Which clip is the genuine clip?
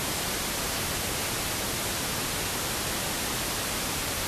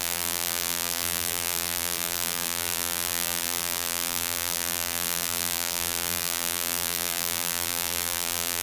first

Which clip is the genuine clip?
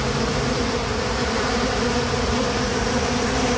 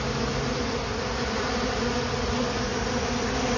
second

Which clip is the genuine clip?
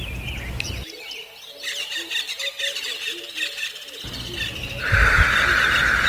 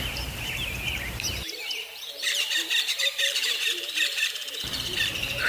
first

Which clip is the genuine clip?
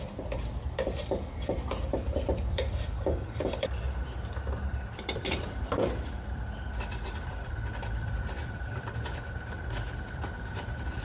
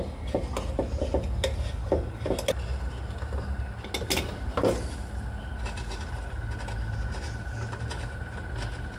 second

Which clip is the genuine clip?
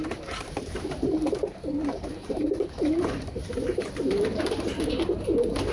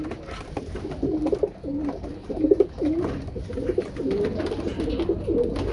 second